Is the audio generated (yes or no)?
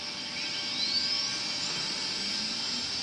no